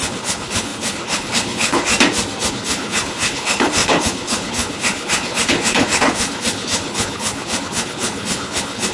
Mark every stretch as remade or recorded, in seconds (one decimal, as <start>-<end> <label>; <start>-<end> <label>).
0.0-1.9 remade; 1.9-2.5 recorded; 2.5-8.9 remade